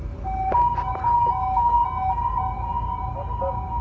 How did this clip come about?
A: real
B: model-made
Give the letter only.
A